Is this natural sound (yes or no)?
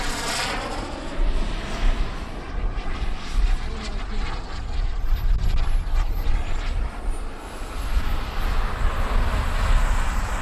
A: yes